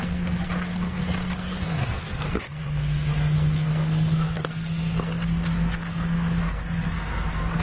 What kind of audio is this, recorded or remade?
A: remade